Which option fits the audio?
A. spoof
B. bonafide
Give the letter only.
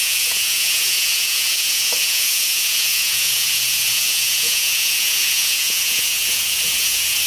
A